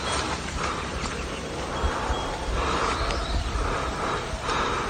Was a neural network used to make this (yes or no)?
yes